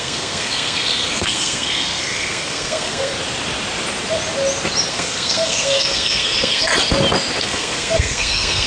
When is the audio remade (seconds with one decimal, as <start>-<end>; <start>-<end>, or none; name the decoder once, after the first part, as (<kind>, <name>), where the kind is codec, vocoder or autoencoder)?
0.0-3.1 (codec, SNAC); 4.9-6.7; 7.4-8.7